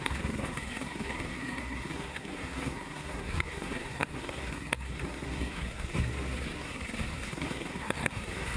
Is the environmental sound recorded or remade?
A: remade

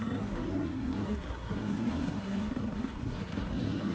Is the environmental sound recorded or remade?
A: remade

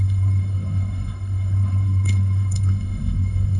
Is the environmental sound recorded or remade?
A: remade